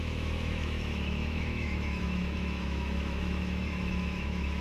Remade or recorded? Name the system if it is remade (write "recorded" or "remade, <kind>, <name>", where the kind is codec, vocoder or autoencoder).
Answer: remade, autoencoder, DAC-VAE